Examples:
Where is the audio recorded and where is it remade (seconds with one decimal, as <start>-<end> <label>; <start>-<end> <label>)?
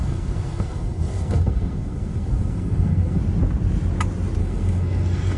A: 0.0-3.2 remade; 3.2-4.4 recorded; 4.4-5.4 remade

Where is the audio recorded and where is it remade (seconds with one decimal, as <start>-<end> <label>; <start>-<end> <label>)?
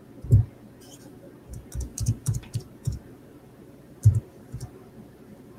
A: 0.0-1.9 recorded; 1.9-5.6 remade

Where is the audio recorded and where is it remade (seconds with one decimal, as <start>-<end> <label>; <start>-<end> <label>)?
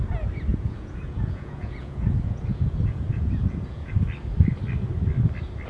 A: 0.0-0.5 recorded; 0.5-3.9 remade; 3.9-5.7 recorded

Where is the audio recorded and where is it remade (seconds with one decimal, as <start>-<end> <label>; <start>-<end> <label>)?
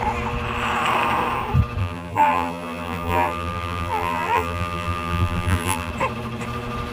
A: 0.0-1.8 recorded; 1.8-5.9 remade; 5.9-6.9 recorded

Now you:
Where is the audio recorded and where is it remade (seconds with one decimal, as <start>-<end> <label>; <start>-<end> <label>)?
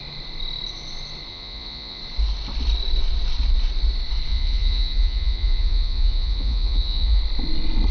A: 0.0-1.3 recorded; 1.3-2.0 remade; 2.0-4.3 recorded; 4.3-7.2 remade; 7.2-7.9 recorded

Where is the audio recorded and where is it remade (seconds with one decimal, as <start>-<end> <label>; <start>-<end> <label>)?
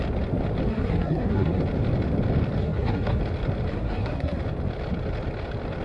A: 0.0-0.7 recorded; 0.7-1.6 remade; 1.6-2.6 recorded; 2.6-3.2 remade; 3.2-3.7 recorded; 3.7-4.4 remade; 4.4-5.8 recorded